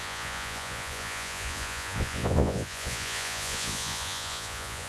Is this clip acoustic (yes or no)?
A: no